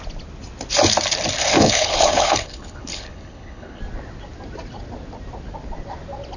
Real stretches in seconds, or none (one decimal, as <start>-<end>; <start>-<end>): 0.0-1.6; 3.8-6.4